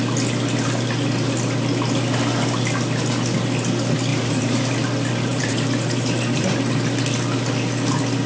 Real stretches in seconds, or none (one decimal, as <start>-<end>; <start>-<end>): 0.0-4.1; 4.7-5.3; 6.5-8.3